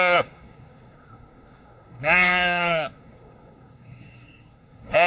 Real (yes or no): no